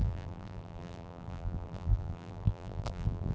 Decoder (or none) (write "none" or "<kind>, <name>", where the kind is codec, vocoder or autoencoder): vocoder, BigVGAN v2